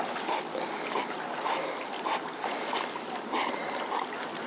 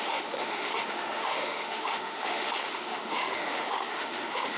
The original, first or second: first